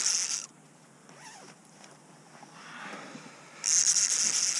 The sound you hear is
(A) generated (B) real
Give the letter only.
B